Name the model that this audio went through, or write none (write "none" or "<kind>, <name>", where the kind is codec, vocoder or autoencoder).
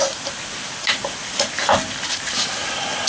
none